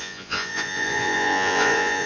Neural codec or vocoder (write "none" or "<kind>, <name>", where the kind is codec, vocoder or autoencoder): vocoder, Vocos